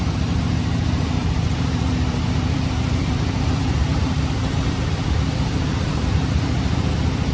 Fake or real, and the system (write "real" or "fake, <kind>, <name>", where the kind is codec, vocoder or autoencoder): fake, vocoder, BigVGAN v2